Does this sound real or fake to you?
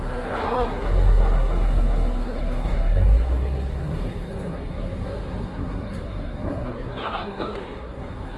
fake